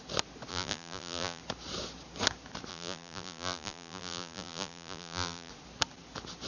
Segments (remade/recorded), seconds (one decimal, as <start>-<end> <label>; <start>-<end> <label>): 0.0-0.5 recorded; 0.5-1.4 remade; 1.4-2.7 recorded; 2.7-5.5 remade; 5.5-6.5 recorded